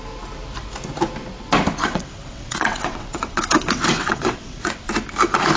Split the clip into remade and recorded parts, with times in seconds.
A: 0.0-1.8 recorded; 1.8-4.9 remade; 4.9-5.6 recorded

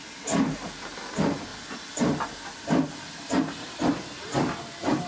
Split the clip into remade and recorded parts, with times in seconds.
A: 0.0-5.1 recorded

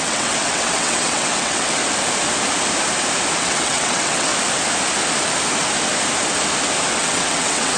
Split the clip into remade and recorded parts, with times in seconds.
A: 0.0-1.8 remade; 1.8-3.4 recorded; 3.4-4.3 remade; 4.3-6.9 recorded; 6.9-7.8 remade